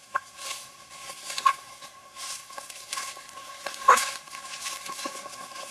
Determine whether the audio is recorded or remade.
remade